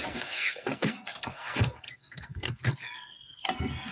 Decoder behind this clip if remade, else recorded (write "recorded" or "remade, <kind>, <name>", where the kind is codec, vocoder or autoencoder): remade, codec, SNAC